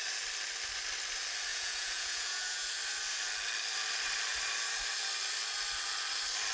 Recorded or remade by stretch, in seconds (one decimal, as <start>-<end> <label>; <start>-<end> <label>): 0.0-1.5 recorded; 1.5-2.7 remade; 2.7-6.5 recorded